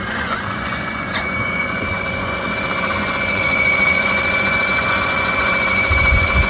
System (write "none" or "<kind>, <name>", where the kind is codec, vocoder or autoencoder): vocoder, Vocos